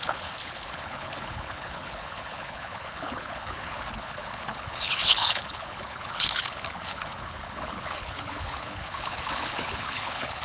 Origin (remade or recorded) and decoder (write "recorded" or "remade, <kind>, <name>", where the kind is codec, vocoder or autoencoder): remade, codec, HILCodec